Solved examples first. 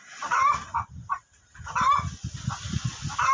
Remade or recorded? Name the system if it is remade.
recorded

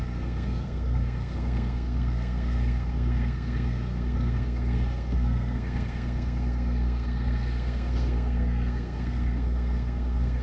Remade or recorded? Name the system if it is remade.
remade, codec, SNAC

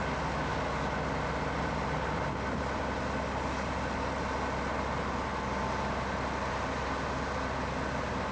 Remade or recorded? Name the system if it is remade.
recorded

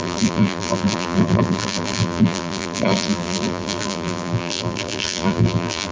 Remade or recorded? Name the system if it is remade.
remade, vocoder, BigVGAN v2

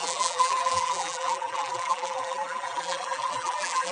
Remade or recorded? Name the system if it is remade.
remade, vocoder, BigVGAN v2